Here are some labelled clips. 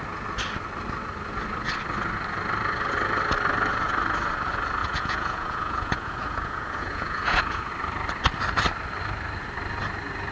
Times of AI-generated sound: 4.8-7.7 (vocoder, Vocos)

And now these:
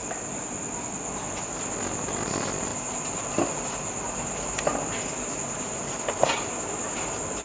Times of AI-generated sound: none

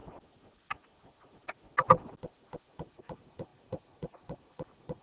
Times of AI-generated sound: 2.7-5.0 (vocoder, Vocos)

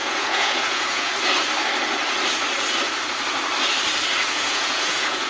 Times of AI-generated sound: 0.0-1.1 (vocoder, Vocos); 4.3-5.3

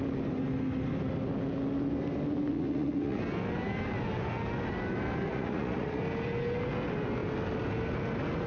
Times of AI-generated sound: 2.5-3.2 (vocoder, Vocos); 5.3-6.0

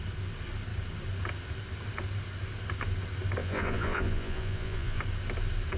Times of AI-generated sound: 3.4-5.0 (vocoder, Vocos)

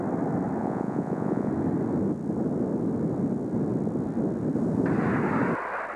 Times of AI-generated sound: 0.6-1.5 (vocoder, Vocos)